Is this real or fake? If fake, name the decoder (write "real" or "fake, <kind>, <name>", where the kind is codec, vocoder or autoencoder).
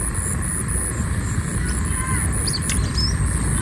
real